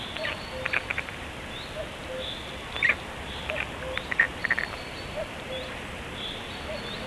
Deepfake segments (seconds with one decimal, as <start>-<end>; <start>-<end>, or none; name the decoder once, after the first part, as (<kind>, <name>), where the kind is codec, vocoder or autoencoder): 4.4-5.7 (vocoder, BigVGAN v2)